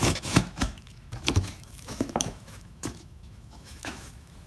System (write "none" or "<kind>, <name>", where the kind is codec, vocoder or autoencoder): autoencoder, DAC-VAE